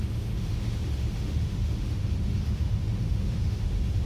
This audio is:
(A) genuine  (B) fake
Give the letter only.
B